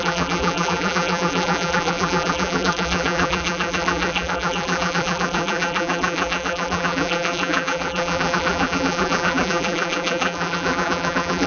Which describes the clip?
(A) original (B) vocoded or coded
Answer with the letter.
B